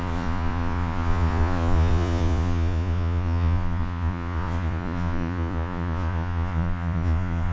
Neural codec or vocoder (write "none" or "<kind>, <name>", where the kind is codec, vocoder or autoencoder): vocoder, Vocos